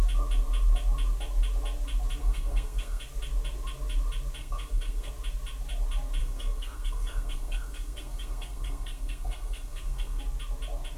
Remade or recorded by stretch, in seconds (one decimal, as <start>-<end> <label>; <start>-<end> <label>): 0.0-2.2 recorded; 2.2-3.0 remade; 3.0-4.4 recorded; 4.4-5.1 remade; 5.1-6.2 recorded; 6.2-10.2 remade; 10.2-11.0 recorded